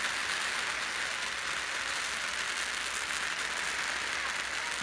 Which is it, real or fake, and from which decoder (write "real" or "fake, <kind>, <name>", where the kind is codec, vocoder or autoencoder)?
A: real